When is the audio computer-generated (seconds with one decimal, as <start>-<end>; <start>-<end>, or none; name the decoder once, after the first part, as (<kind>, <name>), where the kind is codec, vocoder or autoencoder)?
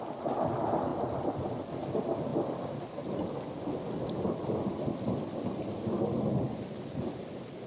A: none